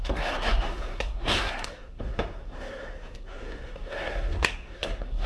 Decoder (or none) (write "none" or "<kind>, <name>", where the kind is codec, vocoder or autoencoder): codec, SNAC